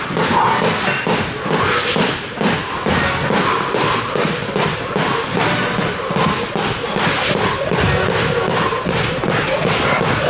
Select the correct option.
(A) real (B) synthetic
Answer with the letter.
A